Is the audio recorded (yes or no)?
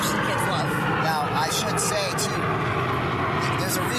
yes